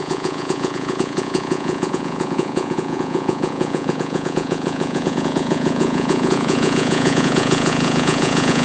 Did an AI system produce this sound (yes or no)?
yes